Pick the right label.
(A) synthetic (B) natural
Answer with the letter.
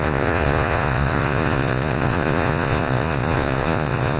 A